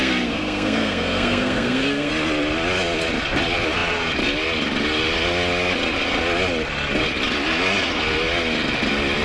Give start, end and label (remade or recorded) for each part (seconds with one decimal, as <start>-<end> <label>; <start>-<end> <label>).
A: 0.0-2.1 remade; 2.1-9.2 recorded